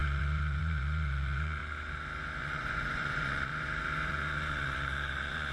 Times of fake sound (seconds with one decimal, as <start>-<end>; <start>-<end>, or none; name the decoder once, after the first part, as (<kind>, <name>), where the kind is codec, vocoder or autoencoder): 0.0-1.6 (vocoder, Vocos); 2.4-3.5; 4.1-5.5